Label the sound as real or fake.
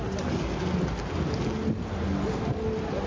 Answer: real